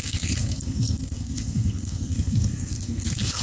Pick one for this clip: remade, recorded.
remade